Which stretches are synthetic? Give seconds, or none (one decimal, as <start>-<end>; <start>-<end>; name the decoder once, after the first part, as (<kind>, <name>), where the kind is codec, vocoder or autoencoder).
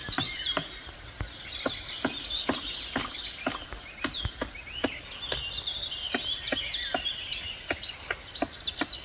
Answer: 0.0-0.9 (vocoder, BigVGAN v2)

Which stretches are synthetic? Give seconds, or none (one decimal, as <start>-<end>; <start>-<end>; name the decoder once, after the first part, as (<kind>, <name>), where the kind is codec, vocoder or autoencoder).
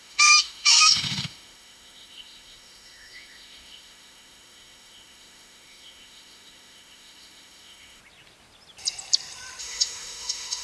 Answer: 0.0-8.0 (autoencoder, DAC-VAE); 9.6-10.6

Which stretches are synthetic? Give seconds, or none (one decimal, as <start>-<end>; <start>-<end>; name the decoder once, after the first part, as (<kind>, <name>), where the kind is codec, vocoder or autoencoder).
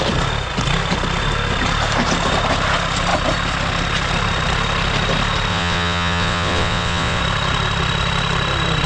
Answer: 5.5-7.2 (vocoder, WaveNeXt)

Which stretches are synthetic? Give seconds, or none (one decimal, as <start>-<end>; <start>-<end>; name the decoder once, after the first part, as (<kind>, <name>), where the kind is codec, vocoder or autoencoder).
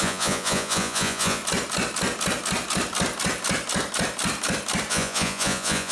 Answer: 0.0-1.4 (vocoder, Vocos); 4.9-5.9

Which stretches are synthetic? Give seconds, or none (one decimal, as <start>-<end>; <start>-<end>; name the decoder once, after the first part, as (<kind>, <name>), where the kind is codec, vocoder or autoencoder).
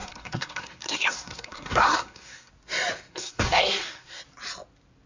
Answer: 0.0-2.5 (codec, SNAC); 3.1-4.2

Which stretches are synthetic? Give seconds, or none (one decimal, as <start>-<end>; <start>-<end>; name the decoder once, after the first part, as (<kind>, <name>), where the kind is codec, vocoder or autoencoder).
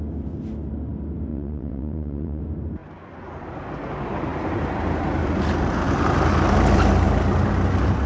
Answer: 1.3-2.4 (vocoder, WaveNeXt)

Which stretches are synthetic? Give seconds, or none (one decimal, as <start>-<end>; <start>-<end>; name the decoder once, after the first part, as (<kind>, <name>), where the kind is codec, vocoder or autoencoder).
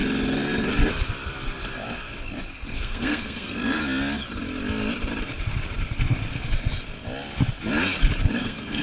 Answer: 2.7-3.8 (codec, SNAC); 8.4-8.8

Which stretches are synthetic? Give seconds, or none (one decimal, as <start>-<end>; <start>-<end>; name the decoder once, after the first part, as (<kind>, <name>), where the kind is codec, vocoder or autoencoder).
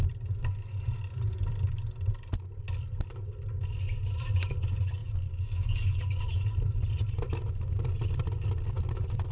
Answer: 5.0-6.2 (codec, DAC)